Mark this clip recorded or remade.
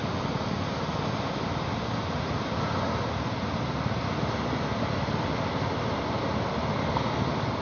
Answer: recorded